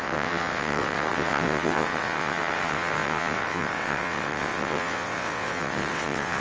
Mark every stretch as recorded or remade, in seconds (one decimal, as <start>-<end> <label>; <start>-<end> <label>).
0.0-6.4 remade